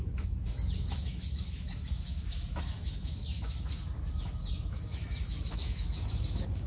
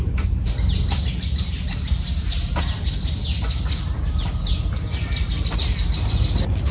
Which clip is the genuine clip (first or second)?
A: second